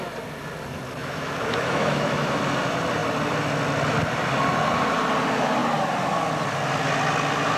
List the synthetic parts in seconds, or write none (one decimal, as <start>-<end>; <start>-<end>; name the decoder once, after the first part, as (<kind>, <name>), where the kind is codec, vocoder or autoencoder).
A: 1.0-2.4 (autoencoder, DAC-VAE)

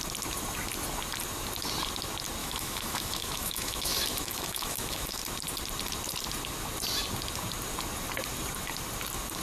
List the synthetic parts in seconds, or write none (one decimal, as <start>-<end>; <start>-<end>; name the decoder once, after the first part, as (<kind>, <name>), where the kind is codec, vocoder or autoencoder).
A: 2.4-5.2 (autoencoder, DAC-VAE)

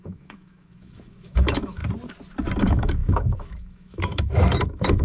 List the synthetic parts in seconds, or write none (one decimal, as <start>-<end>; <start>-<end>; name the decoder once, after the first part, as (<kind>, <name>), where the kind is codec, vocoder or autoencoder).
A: 0.0-1.8 (autoencoder, DAC-VAE); 2.6-5.0

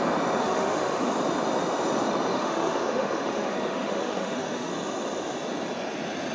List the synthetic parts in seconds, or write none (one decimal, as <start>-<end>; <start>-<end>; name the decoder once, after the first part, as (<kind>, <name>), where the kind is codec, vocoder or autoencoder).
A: 0.4-1.1 (autoencoder, DAC-VAE); 2.3-4.7

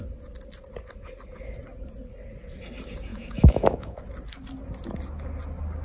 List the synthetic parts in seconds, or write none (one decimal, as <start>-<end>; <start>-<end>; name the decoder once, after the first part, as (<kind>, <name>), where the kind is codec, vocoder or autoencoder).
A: 3.1-4.0 (autoencoder, DAC-VAE)

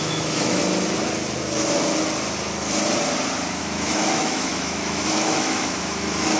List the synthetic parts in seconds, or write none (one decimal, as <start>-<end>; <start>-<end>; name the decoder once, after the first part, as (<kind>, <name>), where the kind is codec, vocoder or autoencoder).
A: 0.0-0.6 (autoencoder, DAC-VAE); 3.6-6.4